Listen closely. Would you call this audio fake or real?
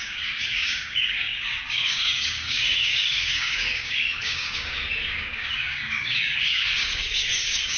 fake